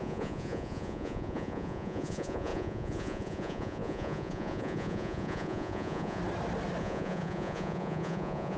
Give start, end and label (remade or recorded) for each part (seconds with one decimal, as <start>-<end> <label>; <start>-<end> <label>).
0.0-6.2 remade; 6.2-6.8 recorded; 6.8-8.6 remade